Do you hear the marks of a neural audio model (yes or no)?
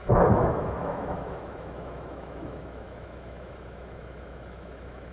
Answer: yes